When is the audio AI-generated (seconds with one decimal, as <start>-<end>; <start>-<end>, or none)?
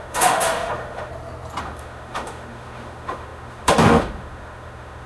0.0-1.1; 1.6-5.1